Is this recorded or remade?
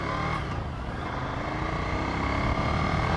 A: recorded